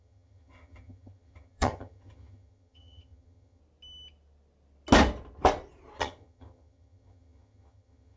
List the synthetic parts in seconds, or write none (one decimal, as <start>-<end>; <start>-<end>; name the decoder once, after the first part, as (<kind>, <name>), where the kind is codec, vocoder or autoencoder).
0.0-3.6 (vocoder, HiFi-GAN); 6.0-8.2